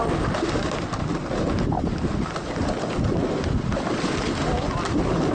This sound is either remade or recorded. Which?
recorded